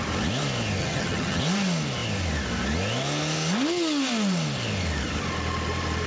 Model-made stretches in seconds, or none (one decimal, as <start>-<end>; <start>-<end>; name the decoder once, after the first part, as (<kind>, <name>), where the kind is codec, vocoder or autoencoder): 0.8-1.4 (vocoder, HiFi-GAN)